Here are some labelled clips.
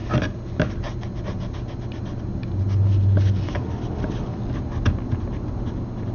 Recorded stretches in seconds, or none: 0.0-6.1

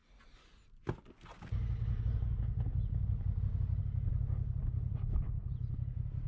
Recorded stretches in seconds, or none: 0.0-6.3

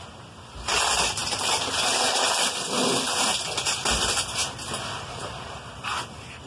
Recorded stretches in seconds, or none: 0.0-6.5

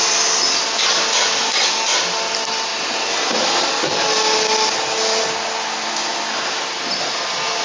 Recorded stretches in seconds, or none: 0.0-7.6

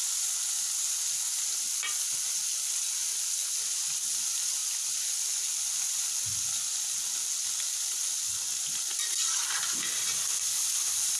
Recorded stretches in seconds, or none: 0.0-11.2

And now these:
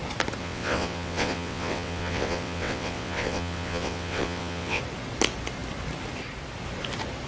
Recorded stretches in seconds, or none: 0.0-0.4; 4.8-7.3

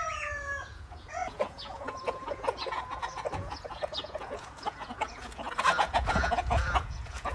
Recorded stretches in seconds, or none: none

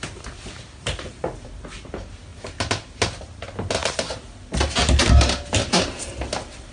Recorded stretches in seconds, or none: 0.0-6.7